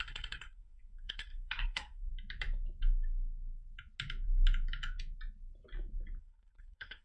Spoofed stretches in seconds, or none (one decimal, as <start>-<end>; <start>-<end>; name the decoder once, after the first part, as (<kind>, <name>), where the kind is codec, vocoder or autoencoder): 0.0-2.1 (codec, SNAC); 6.2-7.0